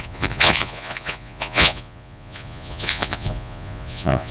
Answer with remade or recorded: remade